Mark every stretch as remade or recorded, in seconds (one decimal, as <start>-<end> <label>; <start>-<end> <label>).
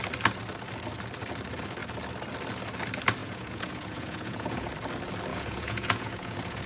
0.0-3.2 recorded; 3.2-4.7 remade; 4.7-5.3 recorded; 5.3-6.7 remade